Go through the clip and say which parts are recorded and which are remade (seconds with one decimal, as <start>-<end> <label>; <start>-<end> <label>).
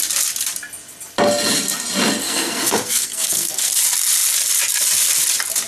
0.0-2.2 recorded; 2.2-3.7 remade; 3.7-5.7 recorded